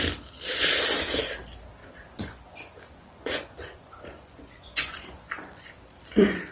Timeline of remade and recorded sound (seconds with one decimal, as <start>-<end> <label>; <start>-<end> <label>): 0.0-1.8 recorded; 1.8-5.7 remade; 5.7-6.5 recorded